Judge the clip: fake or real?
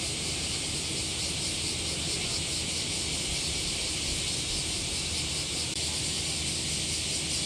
real